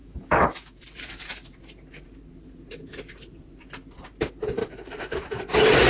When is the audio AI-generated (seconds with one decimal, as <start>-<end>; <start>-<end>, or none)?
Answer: 0.0-0.8; 4.6-5.4